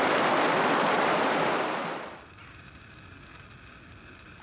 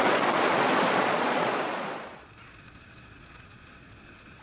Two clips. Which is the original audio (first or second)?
first